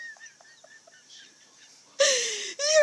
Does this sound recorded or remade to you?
remade